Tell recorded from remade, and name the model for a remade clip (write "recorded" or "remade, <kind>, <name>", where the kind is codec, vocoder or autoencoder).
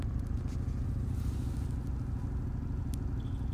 recorded